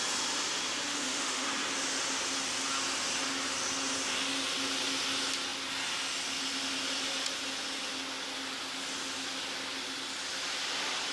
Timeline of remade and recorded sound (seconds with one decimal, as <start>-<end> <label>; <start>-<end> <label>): 0.0-0.9 recorded; 0.9-1.5 remade; 1.5-11.1 recorded